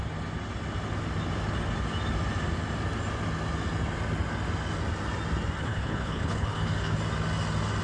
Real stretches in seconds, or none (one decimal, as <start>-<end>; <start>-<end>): 0.0-5.6; 7.0-7.8